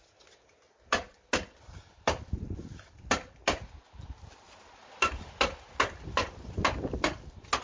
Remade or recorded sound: recorded